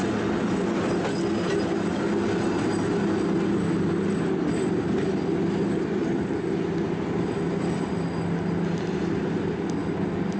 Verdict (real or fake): real